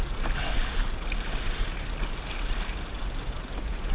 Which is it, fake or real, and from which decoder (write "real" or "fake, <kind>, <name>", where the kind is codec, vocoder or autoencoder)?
real